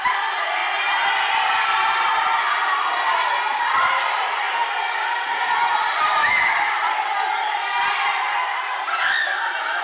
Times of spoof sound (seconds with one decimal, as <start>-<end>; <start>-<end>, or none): 0.0-0.6; 1.3-9.8

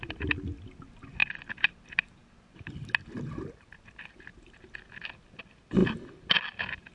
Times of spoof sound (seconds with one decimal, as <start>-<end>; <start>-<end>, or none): 1.2-1.7

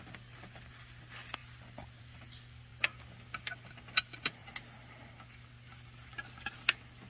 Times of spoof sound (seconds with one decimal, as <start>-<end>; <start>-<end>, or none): none

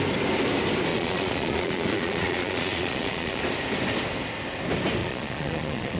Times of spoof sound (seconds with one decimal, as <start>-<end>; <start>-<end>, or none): 0.9-3.4; 5.0-6.0